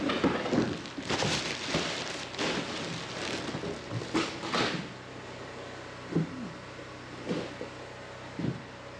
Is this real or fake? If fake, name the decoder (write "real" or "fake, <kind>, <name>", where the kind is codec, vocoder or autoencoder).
real